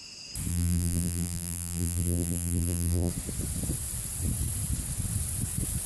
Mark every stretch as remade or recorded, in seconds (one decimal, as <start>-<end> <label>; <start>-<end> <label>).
0.0-0.5 recorded; 0.5-3.1 remade; 3.1-5.9 recorded